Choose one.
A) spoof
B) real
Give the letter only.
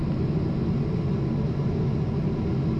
B